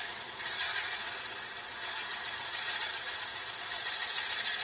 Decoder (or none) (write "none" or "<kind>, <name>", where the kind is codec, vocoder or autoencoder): vocoder, Vocos